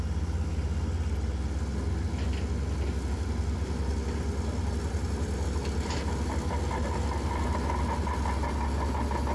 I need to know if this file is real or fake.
real